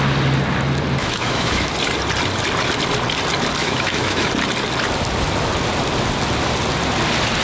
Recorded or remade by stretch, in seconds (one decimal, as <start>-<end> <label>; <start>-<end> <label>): 0.0-1.0 recorded; 1.0-1.7 remade; 1.7-3.6 recorded; 3.6-4.3 remade; 4.3-7.4 recorded